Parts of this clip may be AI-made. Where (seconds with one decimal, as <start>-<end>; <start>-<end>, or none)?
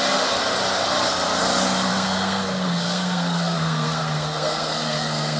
1.9-5.4